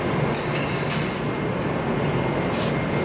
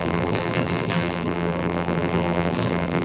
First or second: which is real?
first